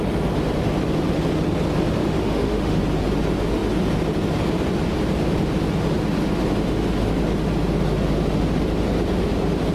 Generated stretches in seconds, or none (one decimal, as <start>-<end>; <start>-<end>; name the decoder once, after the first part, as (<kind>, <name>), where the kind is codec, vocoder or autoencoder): 2.0-2.8 (autoencoder, DAC-VAE)